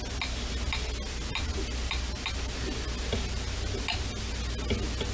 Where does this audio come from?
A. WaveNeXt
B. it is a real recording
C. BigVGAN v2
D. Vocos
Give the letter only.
B